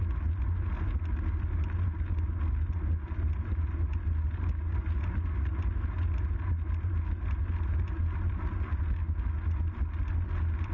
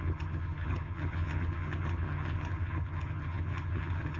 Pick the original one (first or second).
first